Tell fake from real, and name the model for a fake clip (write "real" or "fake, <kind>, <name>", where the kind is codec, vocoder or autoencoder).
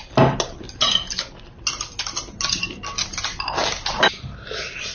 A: real